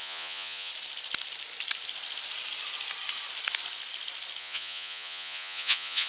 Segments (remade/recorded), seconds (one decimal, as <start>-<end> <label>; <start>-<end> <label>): 0.0-0.7 remade; 0.7-4.4 recorded; 4.4-6.1 remade